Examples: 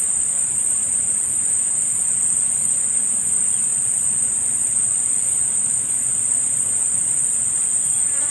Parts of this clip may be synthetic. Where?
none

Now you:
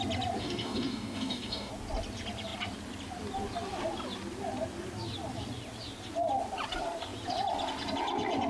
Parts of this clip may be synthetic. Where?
0.4-1.7

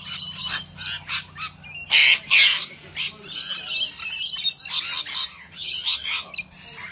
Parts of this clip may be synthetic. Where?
5.3-6.3

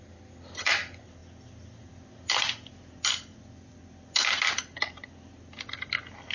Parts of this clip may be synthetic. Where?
none

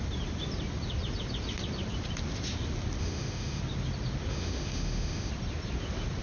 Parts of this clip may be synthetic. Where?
3.0-3.6; 4.3-5.3

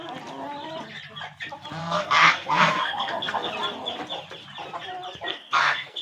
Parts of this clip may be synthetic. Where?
1.8-3.5; 5.3-6.0